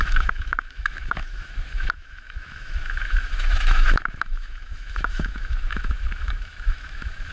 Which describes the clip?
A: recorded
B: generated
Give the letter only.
B